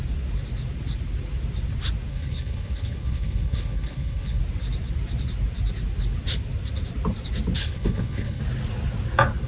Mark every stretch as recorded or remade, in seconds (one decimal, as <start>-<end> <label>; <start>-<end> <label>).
0.0-2.1 recorded; 2.1-4.4 remade; 4.4-7.6 recorded; 7.6-8.4 remade; 8.4-9.5 recorded